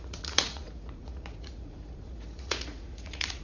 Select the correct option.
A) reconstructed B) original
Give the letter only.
A